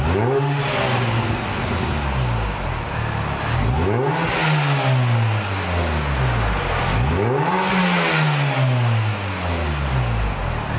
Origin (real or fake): real